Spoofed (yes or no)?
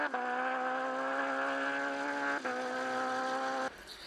no